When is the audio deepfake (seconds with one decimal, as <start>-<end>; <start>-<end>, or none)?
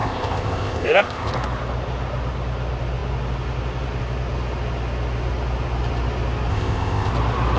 0.0-1.3; 6.5-7.1